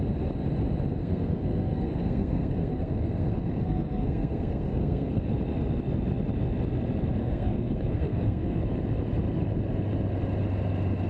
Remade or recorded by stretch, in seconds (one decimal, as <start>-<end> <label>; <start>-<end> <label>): 0.0-1.0 recorded; 1.0-5.3 remade; 5.3-7.2 recorded; 7.2-8.6 remade; 8.6-11.1 recorded